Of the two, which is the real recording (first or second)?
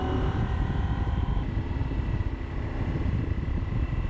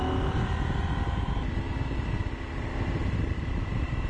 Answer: second